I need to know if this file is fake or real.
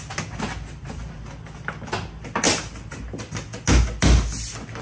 real